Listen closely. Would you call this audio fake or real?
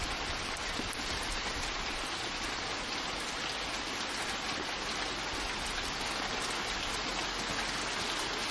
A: real